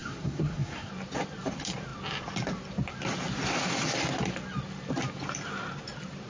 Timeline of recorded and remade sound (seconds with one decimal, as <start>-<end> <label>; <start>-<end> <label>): 0.0-0.9 remade; 0.9-6.3 recorded